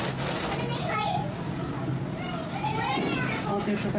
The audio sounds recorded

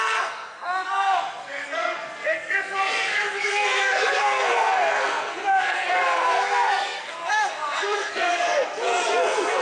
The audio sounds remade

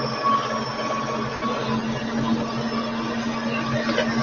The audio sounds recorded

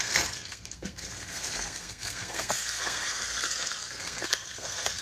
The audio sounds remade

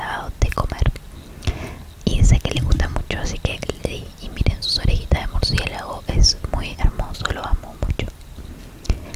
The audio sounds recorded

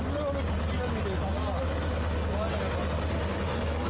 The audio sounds recorded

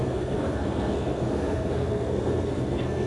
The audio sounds remade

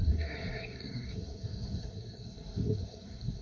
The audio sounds remade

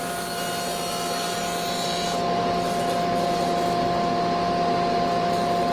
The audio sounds recorded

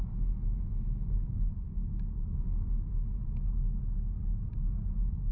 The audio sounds recorded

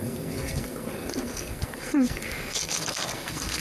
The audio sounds remade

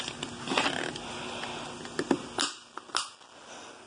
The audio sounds recorded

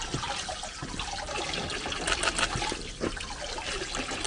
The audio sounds recorded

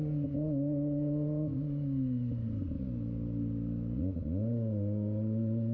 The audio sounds recorded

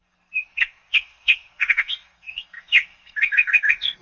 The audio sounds remade